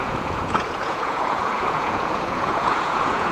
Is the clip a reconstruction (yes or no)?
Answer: yes